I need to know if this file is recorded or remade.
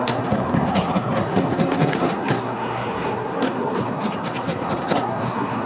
remade